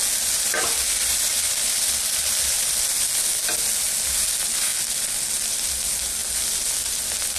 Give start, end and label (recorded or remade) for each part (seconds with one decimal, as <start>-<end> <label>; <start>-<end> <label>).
0.0-7.4 recorded